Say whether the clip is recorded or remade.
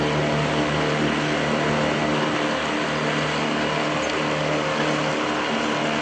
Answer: recorded